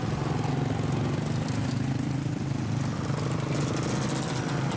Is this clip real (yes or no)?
yes